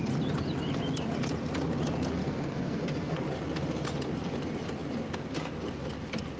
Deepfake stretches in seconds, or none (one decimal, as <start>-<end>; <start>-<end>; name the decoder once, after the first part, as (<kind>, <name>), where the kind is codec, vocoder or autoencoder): 2.2-3.2 (codec, SNAC)